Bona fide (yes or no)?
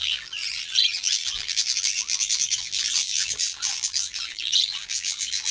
no